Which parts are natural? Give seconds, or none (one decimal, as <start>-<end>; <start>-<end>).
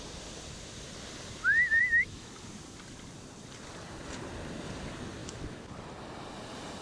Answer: 0.0-1.8; 2.3-5.2; 5.7-6.8